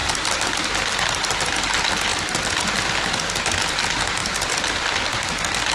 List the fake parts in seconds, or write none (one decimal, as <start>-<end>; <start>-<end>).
0.0-0.9; 2.1-3.1; 4.2-5.7